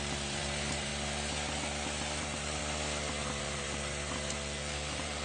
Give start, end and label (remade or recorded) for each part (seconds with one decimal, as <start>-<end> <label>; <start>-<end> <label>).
0.0-0.9 remade; 0.9-2.2 recorded; 2.2-2.6 remade; 2.6-3.4 recorded; 3.4-5.2 remade